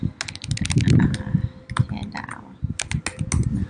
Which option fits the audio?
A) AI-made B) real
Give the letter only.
B